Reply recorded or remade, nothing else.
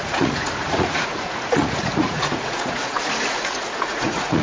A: remade